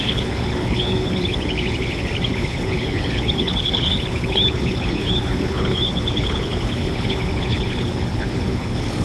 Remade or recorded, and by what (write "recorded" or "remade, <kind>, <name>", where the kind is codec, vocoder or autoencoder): remade, codec, HILCodec